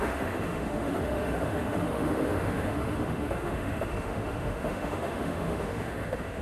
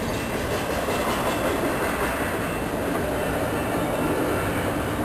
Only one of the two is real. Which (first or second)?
second